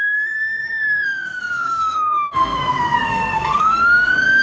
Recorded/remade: remade